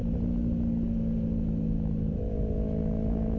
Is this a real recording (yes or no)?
yes